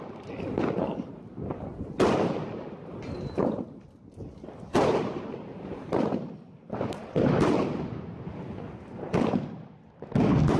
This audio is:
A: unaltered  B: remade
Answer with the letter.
A